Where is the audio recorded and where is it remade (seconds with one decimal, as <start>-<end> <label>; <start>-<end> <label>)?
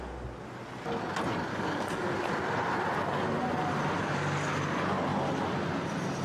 0.0-1.5 recorded; 1.5-2.1 remade; 2.1-6.2 recorded